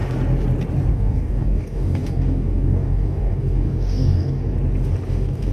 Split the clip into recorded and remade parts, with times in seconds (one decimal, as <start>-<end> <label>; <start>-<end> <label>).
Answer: 0.0-0.9 recorded; 0.9-4.4 remade; 4.4-5.1 recorded; 5.1-5.5 remade